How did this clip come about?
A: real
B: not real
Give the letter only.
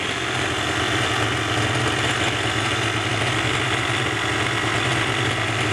A